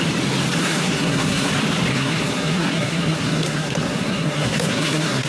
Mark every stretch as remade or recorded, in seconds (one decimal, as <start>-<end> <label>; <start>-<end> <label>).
0.0-0.6 recorded; 0.6-1.5 remade; 1.5-1.9 recorded; 1.9-5.3 remade